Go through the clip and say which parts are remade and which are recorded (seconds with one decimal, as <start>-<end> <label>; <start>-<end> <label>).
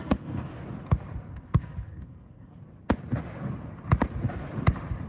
0.0-0.5 remade; 0.5-1.3 recorded; 1.3-2.5 remade; 2.5-5.1 recorded